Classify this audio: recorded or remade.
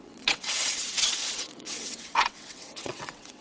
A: remade